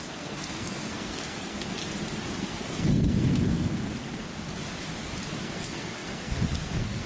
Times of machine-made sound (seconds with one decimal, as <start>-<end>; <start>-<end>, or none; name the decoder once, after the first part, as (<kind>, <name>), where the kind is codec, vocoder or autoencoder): 0.0-1.8 (codec, SNAC); 2.4-4.3; 5.4-7.1